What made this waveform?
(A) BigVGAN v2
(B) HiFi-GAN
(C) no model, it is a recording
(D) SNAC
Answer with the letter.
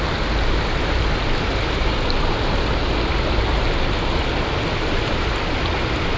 C